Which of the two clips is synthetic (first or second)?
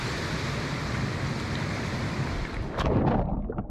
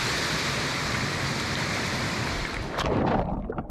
second